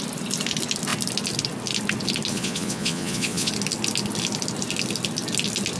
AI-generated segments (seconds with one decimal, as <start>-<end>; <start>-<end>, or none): 2.3-3.5